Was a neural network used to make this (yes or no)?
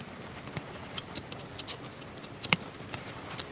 no